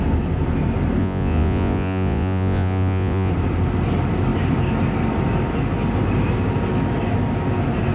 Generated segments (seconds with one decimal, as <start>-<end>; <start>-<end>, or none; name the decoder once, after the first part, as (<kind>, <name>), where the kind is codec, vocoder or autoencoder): 1.0-3.3 (vocoder, Vocos)